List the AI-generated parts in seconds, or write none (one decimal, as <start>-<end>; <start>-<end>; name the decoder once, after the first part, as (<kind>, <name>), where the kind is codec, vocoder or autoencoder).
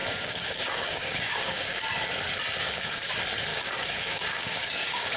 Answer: 0.0-1.8 (codec, DAC); 2.6-3.1; 3.5-5.2